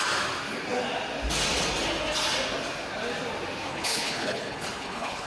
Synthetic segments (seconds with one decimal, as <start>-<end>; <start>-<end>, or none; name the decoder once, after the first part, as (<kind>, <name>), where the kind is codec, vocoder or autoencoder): 3.7-5.3 (codec, HILCodec)